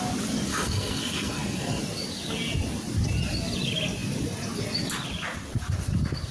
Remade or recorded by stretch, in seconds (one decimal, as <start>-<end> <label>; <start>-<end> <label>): 0.0-0.5 recorded; 0.5-1.8 remade; 1.8-6.3 recorded